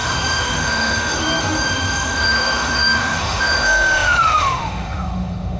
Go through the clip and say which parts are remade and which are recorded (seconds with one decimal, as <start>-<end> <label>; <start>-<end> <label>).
0.0-5.6 remade